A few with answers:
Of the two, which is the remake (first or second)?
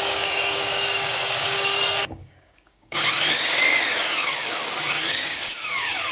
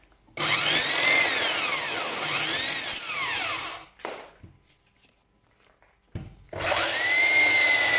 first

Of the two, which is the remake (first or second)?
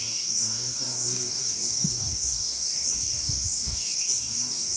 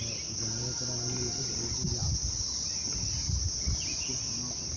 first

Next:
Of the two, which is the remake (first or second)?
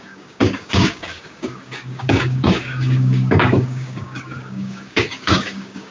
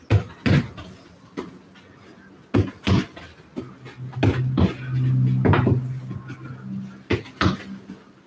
first